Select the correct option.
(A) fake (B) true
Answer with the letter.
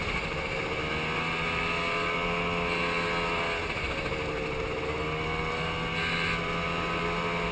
B